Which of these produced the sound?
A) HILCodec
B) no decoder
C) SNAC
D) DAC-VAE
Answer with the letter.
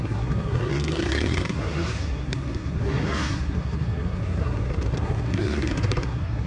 C